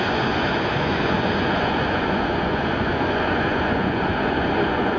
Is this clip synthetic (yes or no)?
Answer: yes